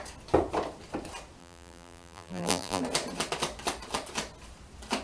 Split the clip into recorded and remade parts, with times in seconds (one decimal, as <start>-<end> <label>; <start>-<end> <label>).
0.0-1.4 recorded; 1.4-2.8 remade; 2.8-5.0 recorded